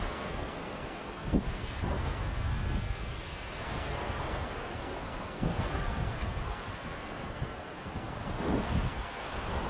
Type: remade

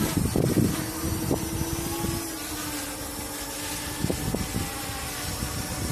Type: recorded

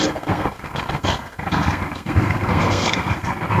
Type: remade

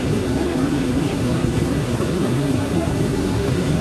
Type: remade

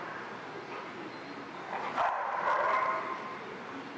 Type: recorded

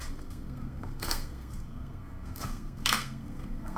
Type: remade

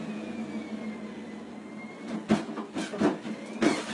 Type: recorded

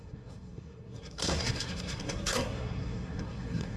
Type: remade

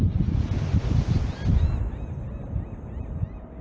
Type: recorded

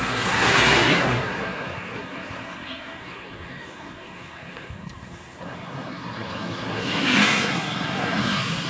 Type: remade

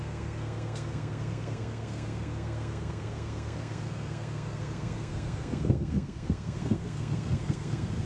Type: remade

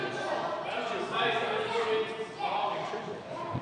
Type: recorded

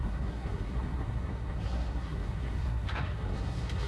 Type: remade